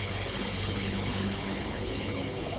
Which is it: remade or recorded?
remade